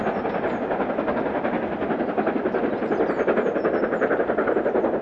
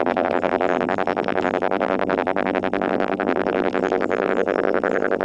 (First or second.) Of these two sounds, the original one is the first